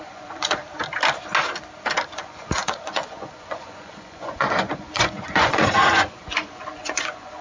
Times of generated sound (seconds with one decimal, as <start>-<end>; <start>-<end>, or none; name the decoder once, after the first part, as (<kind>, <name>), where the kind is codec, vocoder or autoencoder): 0.0-0.6 (vocoder, Vocos); 2.1-7.4